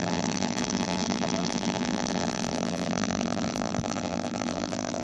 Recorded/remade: remade